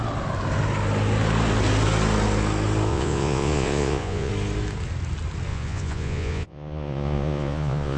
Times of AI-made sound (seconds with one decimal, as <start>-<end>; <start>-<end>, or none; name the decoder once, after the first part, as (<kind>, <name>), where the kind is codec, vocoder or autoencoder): 2.9-4.3 (vocoder, Vocos); 5.5-8.0